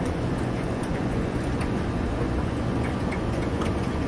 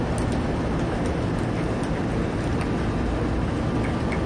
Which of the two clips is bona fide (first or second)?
second